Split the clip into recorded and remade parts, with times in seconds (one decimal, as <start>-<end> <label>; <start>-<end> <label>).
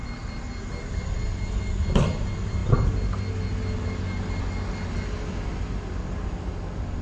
0.0-7.0 recorded